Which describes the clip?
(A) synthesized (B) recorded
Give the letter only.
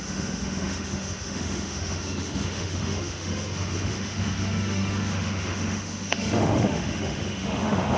A